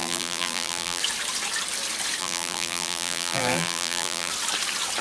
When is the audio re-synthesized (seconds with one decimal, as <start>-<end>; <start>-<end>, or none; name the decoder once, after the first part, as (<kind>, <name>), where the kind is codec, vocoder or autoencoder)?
0.0-1.0 (vocoder, BigVGAN v2); 2.2-4.3